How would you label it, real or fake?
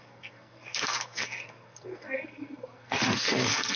fake